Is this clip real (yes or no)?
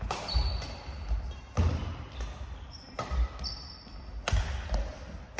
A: yes